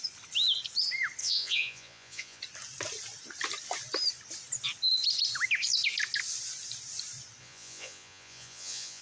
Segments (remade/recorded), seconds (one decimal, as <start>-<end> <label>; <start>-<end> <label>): 0.0-1.2 recorded; 1.2-2.4 remade; 2.4-7.4 recorded; 7.4-9.0 remade

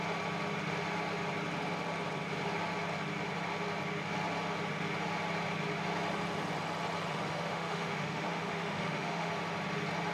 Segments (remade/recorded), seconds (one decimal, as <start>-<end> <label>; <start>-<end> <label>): 0.0-7.1 recorded; 7.1-9.3 remade; 9.3-10.1 recorded

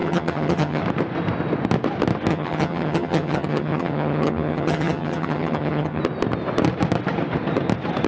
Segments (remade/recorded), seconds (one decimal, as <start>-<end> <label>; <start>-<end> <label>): 0.0-0.8 remade; 0.8-2.3 recorded; 2.3-6.0 remade; 6.0-8.1 recorded

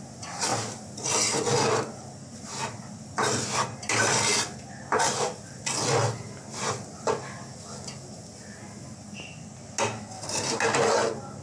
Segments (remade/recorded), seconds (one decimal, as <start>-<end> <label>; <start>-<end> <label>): 0.0-11.4 recorded

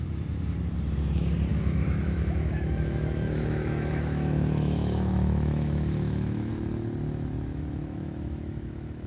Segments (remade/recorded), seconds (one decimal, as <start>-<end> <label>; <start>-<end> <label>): 0.0-1.5 recorded; 1.5-6.5 remade; 6.5-7.5 recorded; 7.5-9.1 remade

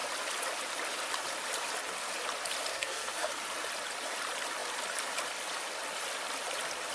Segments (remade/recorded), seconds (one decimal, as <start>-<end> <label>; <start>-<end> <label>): 0.0-2.7 recorded; 2.7-3.3 remade; 3.3-6.9 recorded

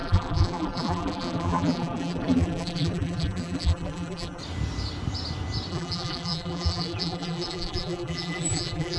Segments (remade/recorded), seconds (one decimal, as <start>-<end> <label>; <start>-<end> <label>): 0.0-4.4 remade; 4.4-5.7 recorded; 5.7-9.0 remade